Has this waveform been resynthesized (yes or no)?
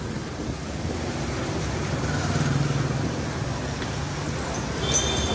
no